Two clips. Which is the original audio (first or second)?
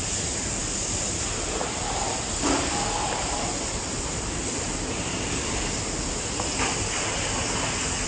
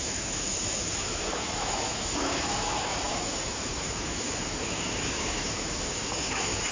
first